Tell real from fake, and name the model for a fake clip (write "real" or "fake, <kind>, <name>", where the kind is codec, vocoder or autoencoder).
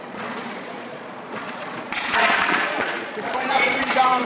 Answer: fake, vocoder, Vocos